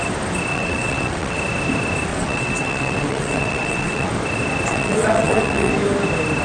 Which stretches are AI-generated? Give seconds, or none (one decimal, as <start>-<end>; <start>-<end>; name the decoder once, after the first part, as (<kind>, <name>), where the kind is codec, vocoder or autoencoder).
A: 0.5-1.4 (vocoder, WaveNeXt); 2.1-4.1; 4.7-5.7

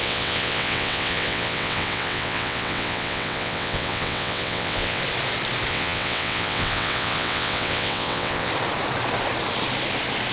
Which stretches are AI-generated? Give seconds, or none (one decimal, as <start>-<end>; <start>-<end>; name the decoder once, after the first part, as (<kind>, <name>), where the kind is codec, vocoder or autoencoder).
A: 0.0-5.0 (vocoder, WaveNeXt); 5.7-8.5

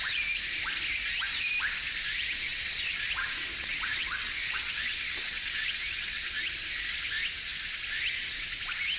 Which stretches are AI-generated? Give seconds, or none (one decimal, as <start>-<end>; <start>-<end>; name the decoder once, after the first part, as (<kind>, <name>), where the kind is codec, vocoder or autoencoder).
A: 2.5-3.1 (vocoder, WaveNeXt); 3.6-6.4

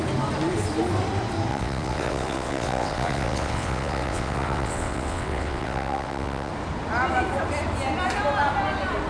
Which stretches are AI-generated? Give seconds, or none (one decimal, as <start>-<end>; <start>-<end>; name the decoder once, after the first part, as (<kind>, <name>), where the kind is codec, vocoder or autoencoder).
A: 1.5-6.5 (vocoder, WaveNeXt)

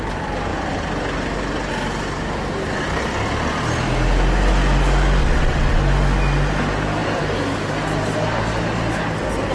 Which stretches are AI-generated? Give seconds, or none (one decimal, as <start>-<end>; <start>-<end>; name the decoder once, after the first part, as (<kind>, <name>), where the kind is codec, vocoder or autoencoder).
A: 5.2-5.8 (vocoder, WaveNeXt)